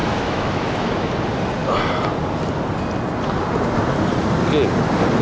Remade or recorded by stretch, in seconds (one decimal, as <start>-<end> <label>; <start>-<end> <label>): 0.0-1.1 remade; 1.1-5.2 recorded